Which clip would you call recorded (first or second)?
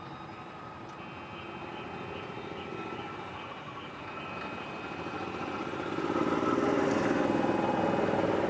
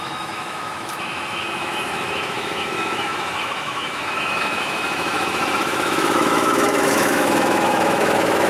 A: first